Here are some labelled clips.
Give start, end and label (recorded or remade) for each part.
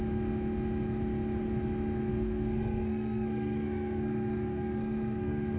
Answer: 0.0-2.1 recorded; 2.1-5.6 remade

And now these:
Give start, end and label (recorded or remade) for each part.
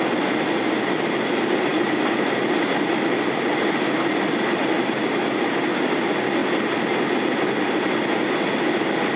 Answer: 0.0-9.2 recorded